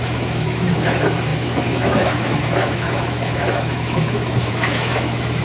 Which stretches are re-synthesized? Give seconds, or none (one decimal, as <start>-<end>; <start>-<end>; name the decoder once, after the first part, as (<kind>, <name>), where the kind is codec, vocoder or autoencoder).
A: 0.0-5.4 (autoencoder, DAC-VAE)